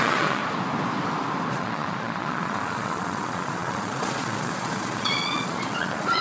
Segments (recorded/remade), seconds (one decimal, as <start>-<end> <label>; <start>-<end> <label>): 0.0-0.4 remade; 0.4-1.5 recorded; 1.5-6.2 remade